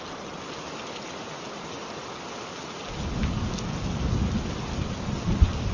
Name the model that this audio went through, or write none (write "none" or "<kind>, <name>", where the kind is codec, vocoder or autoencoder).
none